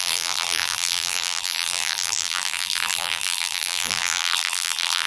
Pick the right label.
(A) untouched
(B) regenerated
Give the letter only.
B